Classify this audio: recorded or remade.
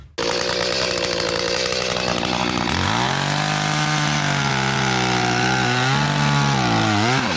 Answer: recorded